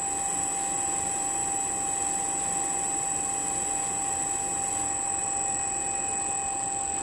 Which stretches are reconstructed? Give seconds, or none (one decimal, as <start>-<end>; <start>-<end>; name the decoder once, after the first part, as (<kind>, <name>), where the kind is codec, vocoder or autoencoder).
none